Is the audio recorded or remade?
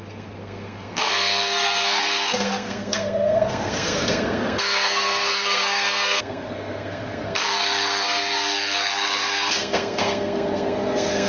remade